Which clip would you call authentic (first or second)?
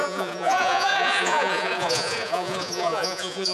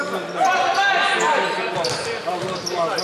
second